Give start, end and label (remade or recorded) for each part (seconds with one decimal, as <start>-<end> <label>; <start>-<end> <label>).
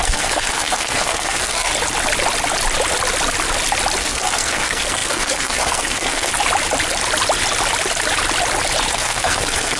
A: 0.0-1.7 remade; 1.7-4.0 recorded; 4.0-6.3 remade; 6.3-8.9 recorded; 8.9-9.8 remade